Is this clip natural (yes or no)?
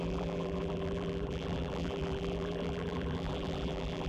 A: no